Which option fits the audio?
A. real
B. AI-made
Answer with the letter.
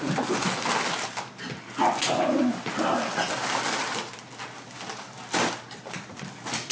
A